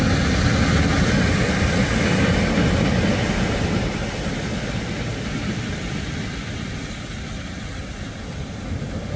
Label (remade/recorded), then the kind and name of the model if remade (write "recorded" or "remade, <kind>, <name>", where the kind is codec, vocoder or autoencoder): recorded